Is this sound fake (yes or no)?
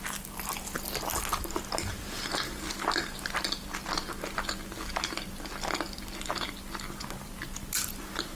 no